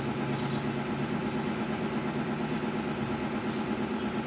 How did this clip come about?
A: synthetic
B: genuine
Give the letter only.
B